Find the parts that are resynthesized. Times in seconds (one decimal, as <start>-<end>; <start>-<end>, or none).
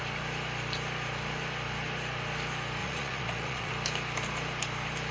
2.8-3.7